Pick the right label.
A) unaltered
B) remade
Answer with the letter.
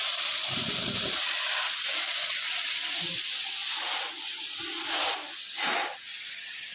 A